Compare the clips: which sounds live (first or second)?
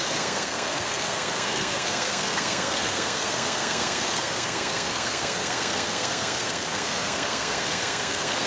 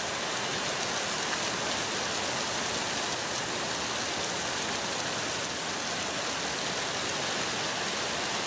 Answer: second